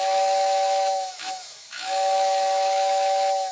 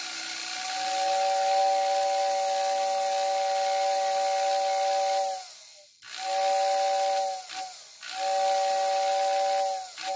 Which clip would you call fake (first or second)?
first